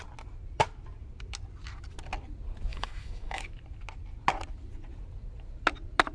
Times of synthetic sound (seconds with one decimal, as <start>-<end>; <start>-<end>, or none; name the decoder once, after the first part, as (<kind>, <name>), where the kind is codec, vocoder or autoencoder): 2.7-3.4 (autoencoder, DAC-VAE)